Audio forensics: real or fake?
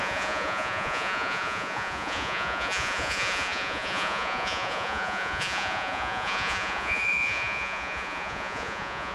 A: fake